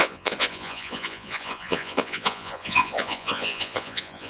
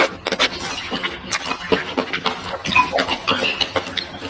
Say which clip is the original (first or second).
second